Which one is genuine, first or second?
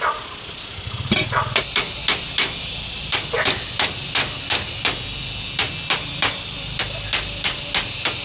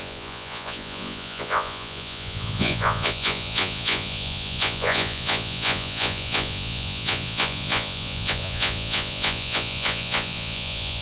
first